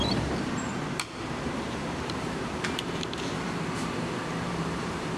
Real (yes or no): no